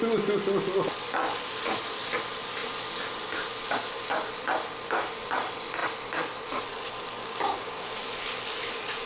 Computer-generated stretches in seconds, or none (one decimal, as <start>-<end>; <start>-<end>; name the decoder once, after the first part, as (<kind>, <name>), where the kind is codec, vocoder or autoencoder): 7.2-7.9 (codec, DAC)

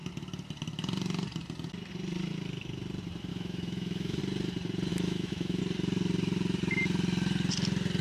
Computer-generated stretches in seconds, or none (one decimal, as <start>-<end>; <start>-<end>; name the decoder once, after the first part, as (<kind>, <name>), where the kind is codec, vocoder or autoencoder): 3.3-4.2 (autoencoder, DAC-VAE); 4.9-5.6

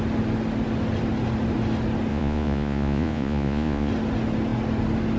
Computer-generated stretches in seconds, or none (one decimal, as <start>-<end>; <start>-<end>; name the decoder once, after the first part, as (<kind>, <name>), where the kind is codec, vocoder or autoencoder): 2.1-3.9 (vocoder, Vocos)

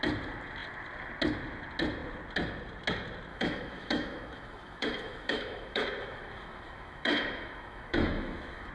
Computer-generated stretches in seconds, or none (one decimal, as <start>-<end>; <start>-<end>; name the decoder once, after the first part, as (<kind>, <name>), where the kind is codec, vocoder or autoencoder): 3.3-8.7 (autoencoder, DAC-VAE)